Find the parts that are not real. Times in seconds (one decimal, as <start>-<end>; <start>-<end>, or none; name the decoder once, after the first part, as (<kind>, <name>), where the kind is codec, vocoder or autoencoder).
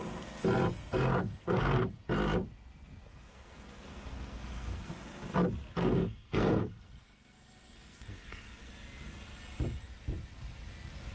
1.4-2.0 (codec, SNAC); 3.1-4.9; 5.8-8.7